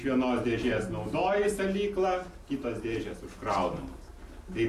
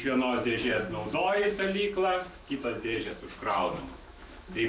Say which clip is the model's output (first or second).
second